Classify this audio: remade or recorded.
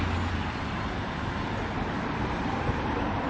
remade